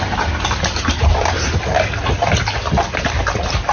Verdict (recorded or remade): remade